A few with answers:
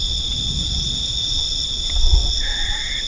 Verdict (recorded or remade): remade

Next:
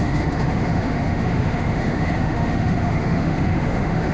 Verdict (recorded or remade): remade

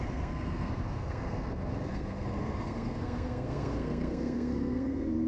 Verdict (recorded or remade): remade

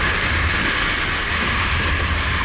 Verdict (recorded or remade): recorded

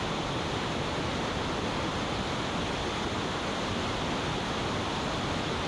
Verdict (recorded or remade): recorded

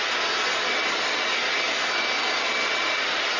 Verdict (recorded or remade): recorded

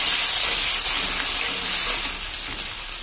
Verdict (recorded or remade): recorded